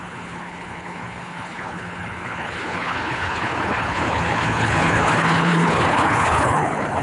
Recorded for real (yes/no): no